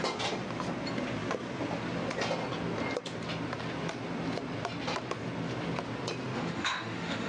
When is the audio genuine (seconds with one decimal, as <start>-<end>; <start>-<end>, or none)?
0.0-6.3